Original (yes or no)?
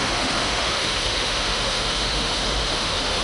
no